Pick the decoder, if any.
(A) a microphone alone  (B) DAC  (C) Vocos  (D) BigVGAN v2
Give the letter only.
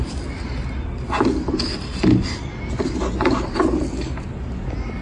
A